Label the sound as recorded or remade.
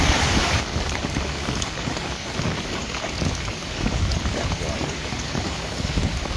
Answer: remade